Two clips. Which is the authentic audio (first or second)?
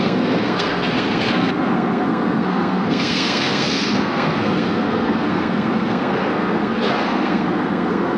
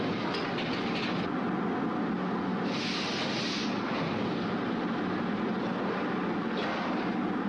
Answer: second